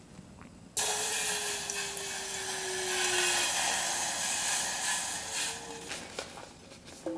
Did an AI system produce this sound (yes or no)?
no